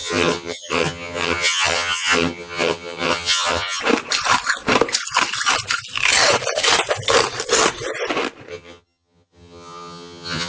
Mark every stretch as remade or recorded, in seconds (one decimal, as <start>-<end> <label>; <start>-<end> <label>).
0.0-3.8 remade; 3.8-8.5 recorded; 8.5-10.5 remade